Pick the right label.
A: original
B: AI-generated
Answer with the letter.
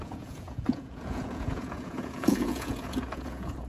B